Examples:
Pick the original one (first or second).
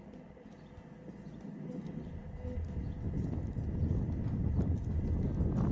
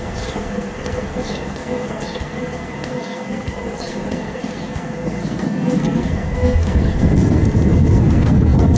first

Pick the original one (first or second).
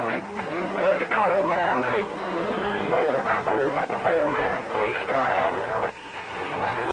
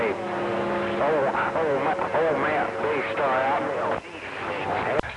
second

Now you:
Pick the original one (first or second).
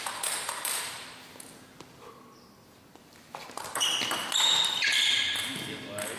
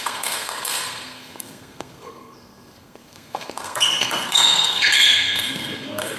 first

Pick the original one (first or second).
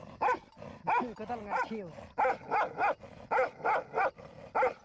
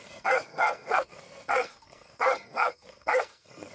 first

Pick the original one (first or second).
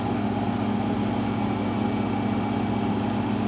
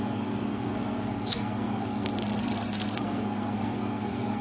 first